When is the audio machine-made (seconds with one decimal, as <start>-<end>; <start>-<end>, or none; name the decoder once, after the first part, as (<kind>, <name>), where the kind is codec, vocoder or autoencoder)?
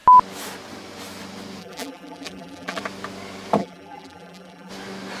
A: 1.6-2.8 (vocoder, BigVGAN v2); 3.6-4.7